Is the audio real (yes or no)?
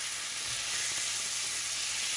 yes